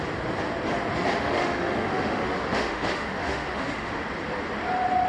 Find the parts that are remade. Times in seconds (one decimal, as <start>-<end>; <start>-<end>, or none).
1.2-4.0